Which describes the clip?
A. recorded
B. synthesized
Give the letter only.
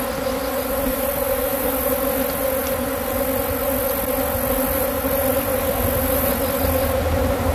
A